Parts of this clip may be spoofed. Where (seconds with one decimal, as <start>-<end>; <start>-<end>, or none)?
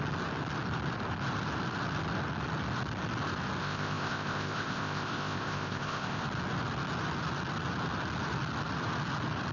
3.6-6.2